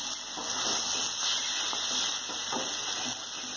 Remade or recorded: recorded